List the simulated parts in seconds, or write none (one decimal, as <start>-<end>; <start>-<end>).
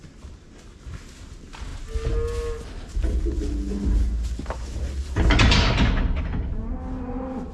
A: none